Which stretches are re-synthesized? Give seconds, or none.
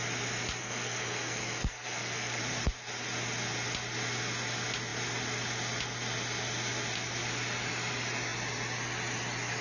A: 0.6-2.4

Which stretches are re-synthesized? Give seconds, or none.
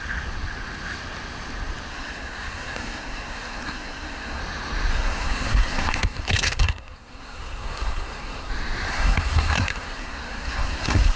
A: 1.9-4.4; 4.9-8.5; 8.9-11.2